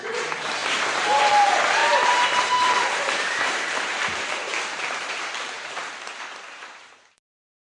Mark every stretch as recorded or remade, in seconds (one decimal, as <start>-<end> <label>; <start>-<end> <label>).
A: 0.0-7.8 remade